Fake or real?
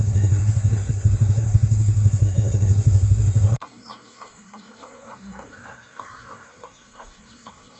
fake